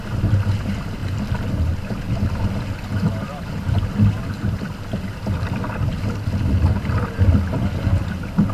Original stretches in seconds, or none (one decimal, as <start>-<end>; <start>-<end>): 0.0-1.0; 1.5-8.5